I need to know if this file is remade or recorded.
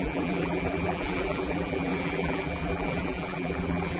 remade